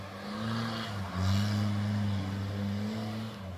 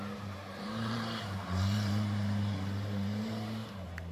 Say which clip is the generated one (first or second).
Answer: second